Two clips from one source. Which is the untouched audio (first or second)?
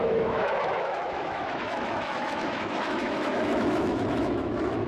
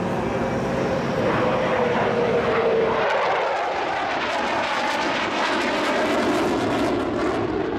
second